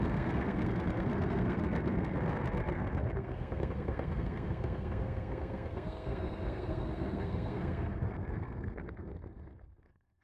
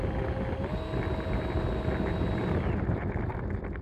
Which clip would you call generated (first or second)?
first